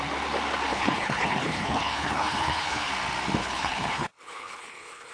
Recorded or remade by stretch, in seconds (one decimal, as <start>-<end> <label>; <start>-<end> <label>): 0.0-0.7 recorded; 0.7-2.9 remade; 2.9-3.4 recorded; 3.4-5.1 remade